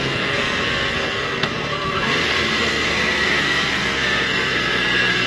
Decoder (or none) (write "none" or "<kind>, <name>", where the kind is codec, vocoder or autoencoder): codec, SNAC